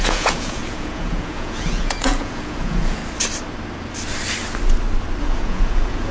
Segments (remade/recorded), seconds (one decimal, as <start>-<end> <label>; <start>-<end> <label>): 0.0-3.0 remade; 3.0-5.2 recorded; 5.2-6.1 remade

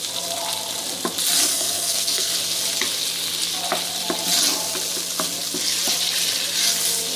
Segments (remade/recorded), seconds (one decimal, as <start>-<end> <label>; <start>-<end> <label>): 0.0-1.5 recorded; 1.5-2.3 remade; 2.3-7.2 recorded

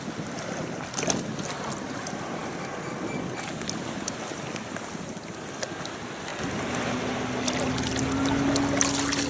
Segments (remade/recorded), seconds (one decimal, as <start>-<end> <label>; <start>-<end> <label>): 0.0-9.3 recorded

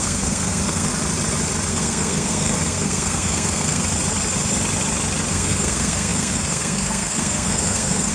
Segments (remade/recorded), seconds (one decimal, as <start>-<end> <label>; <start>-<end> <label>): 0.0-0.9 remade; 0.9-1.7 recorded; 1.7-3.8 remade; 3.8-5.3 recorded; 5.3-8.1 remade

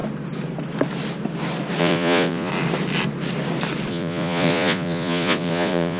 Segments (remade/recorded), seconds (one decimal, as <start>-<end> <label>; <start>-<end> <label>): 0.0-1.8 recorded; 1.8-2.5 remade; 2.5-3.9 recorded; 3.9-6.0 remade

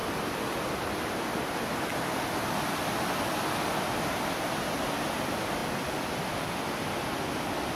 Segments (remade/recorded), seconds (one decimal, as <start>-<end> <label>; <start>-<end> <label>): 0.0-7.8 recorded

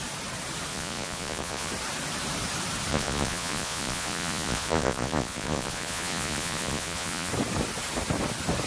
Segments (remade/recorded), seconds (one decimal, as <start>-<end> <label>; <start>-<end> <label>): 0.0-0.7 recorded; 0.7-1.7 remade; 1.7-2.9 recorded; 2.9-7.3 remade; 7.3-8.7 recorded

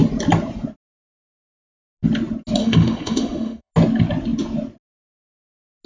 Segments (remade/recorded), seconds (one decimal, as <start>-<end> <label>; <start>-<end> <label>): 0.0-2.6 recorded; 2.6-3.7 remade; 3.7-5.9 recorded